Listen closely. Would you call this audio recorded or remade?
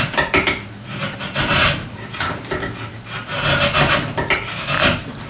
recorded